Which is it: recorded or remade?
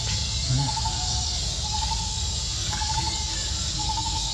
remade